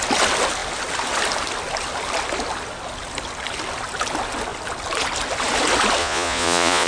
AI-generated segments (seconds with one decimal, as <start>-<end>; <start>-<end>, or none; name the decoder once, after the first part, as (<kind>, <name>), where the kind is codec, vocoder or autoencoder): 6.0-6.9 (vocoder, Vocos)